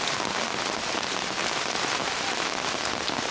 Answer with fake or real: real